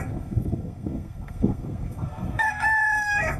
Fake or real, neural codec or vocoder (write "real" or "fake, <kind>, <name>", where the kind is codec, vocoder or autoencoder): fake, codec, SNAC